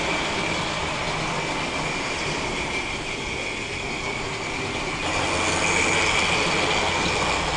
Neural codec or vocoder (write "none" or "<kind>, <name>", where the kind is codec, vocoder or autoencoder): none